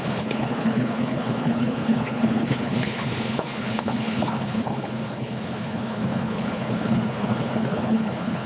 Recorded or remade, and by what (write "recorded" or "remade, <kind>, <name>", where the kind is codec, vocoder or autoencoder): remade, codec, HILCodec